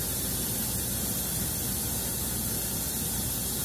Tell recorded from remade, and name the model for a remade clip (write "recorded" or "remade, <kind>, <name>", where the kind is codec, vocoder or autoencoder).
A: recorded